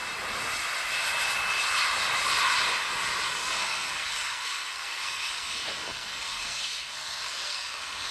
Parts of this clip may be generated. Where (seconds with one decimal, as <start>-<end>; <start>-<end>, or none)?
3.3-8.1